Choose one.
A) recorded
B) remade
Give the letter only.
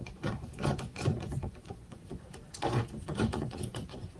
B